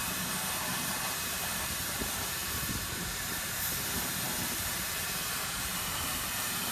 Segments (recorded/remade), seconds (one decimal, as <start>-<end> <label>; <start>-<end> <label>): 0.0-6.7 remade